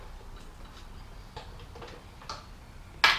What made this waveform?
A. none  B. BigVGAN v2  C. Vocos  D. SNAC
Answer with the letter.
A